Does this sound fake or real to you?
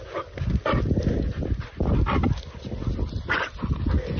real